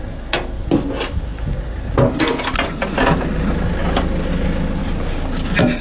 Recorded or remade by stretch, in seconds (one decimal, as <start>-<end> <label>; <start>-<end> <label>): 0.0-5.8 recorded